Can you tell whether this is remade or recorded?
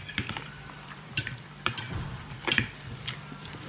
remade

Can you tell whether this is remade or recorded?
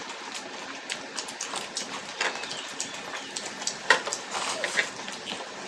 recorded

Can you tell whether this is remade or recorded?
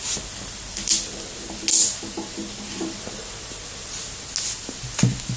recorded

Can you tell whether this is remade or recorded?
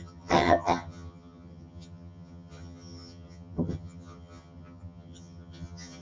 remade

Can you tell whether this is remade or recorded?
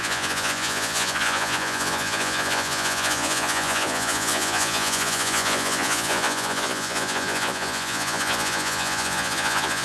remade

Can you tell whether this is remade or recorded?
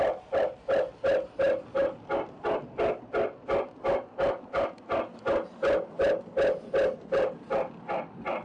recorded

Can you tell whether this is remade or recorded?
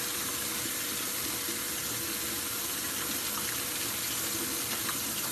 recorded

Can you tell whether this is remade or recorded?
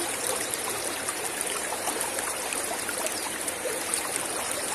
remade